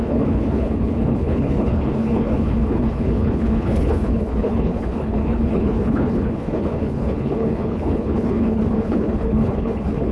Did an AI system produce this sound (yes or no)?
yes